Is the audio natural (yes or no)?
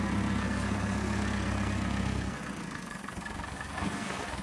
no